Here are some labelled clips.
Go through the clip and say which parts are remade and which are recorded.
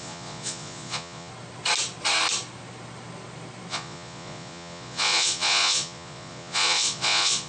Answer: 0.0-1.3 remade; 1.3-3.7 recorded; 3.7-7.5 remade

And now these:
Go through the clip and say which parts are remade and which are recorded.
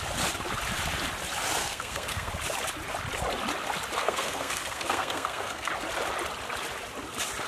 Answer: 0.0-1.6 recorded; 1.6-2.3 remade; 2.3-4.0 recorded; 4.0-5.7 remade; 5.7-7.5 recorded